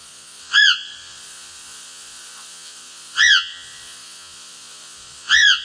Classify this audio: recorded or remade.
remade